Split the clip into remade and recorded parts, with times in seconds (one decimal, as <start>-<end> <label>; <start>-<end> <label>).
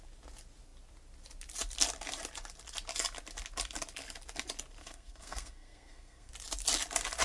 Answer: 0.0-4.8 recorded; 4.8-6.3 remade; 6.3-7.2 recorded